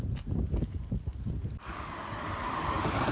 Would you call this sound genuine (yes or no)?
yes